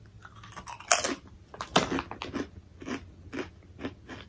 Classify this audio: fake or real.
real